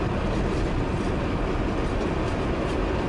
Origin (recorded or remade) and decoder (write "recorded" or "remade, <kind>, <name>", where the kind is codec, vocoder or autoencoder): recorded